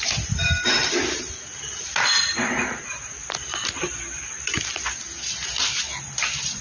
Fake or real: real